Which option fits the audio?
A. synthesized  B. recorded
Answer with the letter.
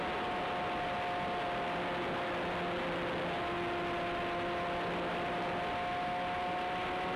B